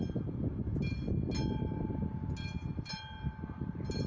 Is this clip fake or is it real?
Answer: real